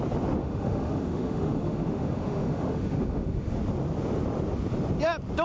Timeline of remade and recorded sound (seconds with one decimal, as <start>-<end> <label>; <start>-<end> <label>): 0.0-0.4 recorded; 0.4-3.6 remade; 3.6-5.4 recorded